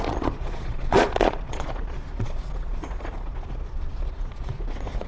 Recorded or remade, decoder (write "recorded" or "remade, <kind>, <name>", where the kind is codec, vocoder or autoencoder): remade, vocoder, Vocos